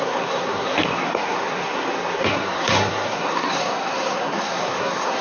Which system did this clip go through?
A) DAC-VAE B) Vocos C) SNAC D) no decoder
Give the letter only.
C